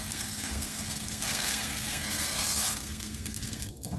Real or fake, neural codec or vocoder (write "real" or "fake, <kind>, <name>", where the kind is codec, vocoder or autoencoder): fake, codec, SNAC